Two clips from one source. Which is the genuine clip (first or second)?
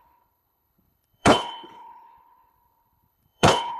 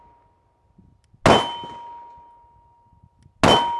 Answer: second